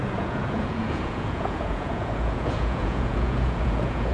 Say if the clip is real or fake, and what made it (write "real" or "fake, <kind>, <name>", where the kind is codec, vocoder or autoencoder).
fake, vocoder, Vocos